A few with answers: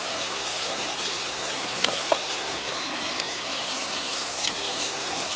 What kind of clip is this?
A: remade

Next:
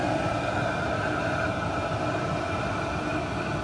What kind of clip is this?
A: recorded